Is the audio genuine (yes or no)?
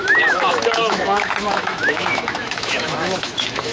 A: no